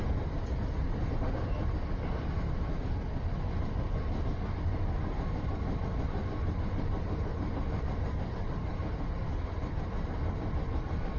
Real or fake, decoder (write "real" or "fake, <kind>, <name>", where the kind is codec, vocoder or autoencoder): real